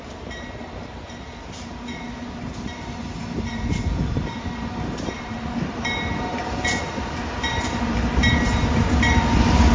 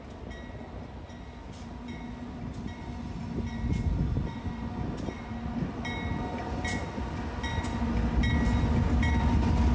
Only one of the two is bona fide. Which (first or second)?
second